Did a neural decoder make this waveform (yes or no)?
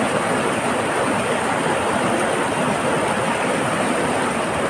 no